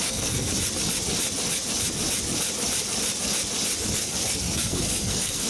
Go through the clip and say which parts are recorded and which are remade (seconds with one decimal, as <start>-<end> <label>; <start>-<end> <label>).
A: 0.0-0.5 remade; 0.5-3.8 recorded; 3.8-5.5 remade